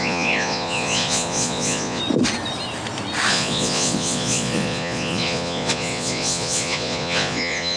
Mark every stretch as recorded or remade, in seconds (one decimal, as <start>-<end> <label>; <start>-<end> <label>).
0.0-2.0 remade; 2.0-3.3 recorded; 3.3-7.8 remade